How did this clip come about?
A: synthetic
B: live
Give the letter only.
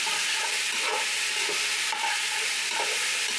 B